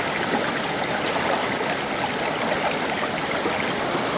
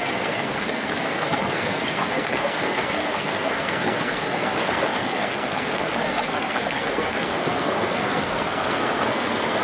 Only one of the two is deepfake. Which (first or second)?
second